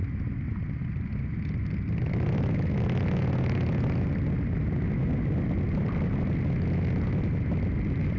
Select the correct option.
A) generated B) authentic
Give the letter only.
B